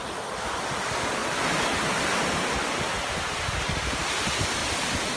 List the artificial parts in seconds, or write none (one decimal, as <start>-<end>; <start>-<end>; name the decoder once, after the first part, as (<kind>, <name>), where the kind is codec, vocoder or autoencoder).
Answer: none